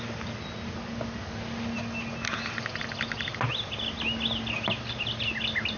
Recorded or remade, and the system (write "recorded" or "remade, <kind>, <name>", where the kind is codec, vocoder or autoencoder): recorded